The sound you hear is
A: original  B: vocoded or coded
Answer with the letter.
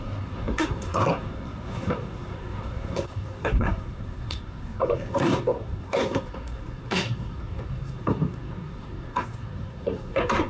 B